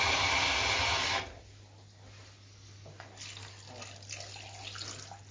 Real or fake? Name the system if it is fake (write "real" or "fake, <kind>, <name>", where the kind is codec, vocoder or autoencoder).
real